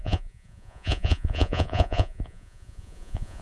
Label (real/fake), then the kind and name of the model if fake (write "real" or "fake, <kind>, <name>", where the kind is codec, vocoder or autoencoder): fake, vocoder, Vocos